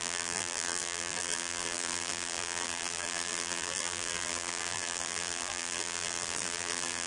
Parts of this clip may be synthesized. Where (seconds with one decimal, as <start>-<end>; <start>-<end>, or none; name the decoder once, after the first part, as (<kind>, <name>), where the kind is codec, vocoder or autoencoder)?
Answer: 0.0-7.1 (vocoder, BigVGAN v2)